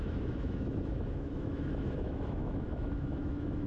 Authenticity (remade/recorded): remade